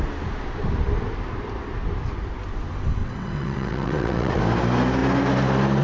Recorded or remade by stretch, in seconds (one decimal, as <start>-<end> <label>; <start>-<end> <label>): 0.0-3.0 recorded; 3.0-4.4 remade; 4.4-5.8 recorded